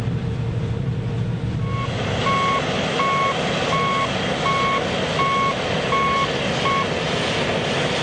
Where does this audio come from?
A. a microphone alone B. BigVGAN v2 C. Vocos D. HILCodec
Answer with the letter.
A